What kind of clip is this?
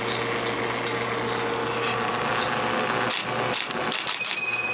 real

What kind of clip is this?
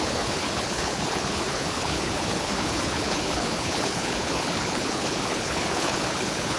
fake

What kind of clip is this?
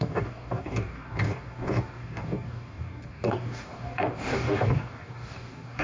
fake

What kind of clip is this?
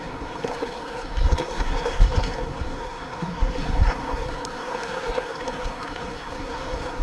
fake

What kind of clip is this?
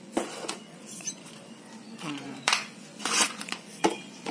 fake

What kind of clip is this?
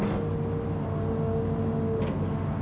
real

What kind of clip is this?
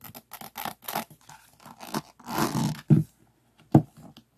real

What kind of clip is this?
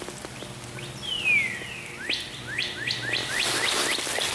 real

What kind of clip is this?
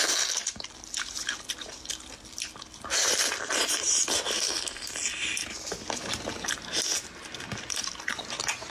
real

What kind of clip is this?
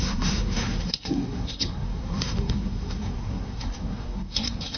fake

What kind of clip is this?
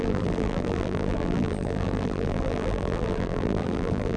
fake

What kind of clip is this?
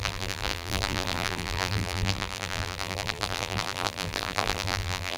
fake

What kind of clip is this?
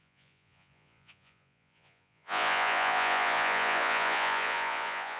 fake